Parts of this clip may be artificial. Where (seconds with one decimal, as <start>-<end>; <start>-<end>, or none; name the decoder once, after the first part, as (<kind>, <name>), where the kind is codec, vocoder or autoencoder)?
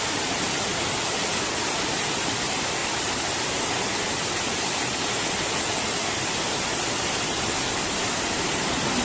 0.0-0.7 (vocoder, BigVGAN v2); 1.6-2.8; 6.2-9.0